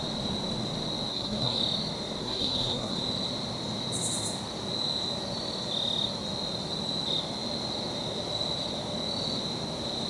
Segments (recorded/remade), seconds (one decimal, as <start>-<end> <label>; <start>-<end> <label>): 0.0-1.1 recorded; 1.1-1.6 remade; 1.6-2.2 recorded; 2.2-3.0 remade; 3.0-10.1 recorded